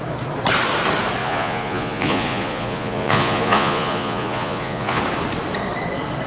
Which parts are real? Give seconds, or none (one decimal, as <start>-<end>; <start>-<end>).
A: 0.0-1.2; 5.0-6.3